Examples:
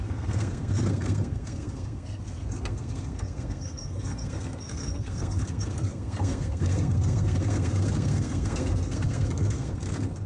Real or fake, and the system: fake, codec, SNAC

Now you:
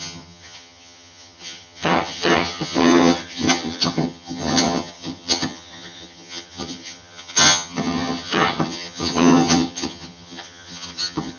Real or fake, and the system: fake, vocoder, HiFi-GAN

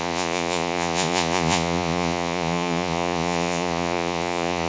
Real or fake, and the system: fake, vocoder, Vocos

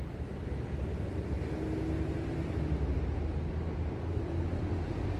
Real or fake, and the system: real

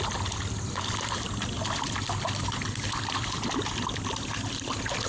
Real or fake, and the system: fake, vocoder, BigVGAN v2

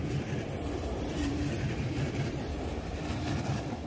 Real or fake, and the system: real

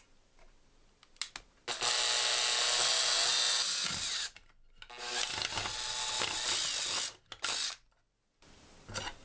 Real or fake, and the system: real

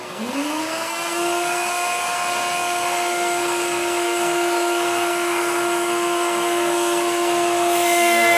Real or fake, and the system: fake, codec, SNAC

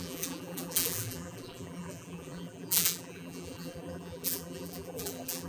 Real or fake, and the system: fake, vocoder, BigVGAN v2